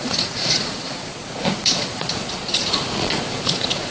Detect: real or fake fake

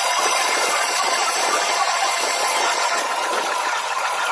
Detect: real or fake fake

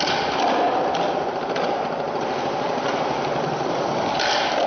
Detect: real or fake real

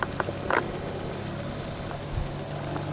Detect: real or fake real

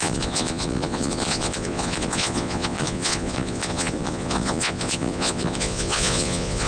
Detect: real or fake fake